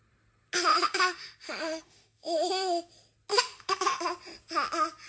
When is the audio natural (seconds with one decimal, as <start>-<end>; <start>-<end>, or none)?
0.0-0.7; 2.9-3.3; 4.0-5.1